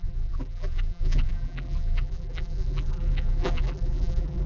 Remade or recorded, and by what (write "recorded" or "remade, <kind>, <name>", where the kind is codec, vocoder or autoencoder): remade, vocoder, BigVGAN v2